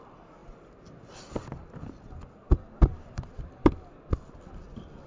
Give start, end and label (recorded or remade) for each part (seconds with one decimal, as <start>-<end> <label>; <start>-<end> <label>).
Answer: 0.0-5.1 recorded